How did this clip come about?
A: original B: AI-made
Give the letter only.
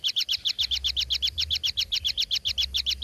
A